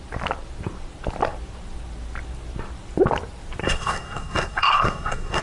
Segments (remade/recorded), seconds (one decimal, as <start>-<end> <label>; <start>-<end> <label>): 0.0-3.6 recorded; 3.6-5.4 remade